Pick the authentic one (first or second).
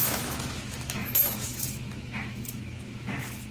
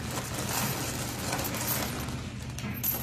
second